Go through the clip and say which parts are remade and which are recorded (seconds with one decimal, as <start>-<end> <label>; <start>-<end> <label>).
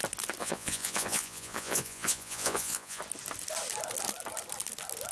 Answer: 0.0-0.4 recorded; 0.4-3.0 remade; 3.0-5.1 recorded